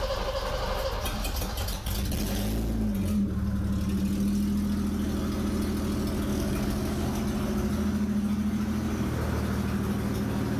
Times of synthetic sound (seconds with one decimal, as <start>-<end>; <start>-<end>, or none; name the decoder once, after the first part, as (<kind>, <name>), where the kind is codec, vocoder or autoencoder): 6.3-7.2 (codec, DAC)